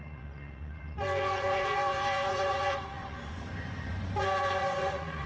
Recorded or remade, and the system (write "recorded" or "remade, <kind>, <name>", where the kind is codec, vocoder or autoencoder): remade, vocoder, Vocos